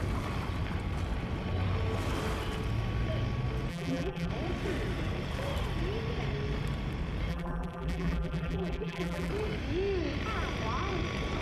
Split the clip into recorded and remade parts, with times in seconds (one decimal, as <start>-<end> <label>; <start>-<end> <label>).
0.0-3.7 recorded; 3.7-4.3 remade; 4.3-7.3 recorded; 7.3-9.3 remade; 9.3-11.4 recorded